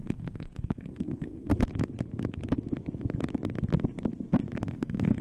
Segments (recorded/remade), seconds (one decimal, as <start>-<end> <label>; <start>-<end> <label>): 0.0-1.5 remade; 1.5-4.6 recorded; 4.6-5.2 remade